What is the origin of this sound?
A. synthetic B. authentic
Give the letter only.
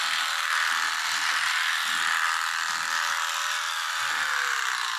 B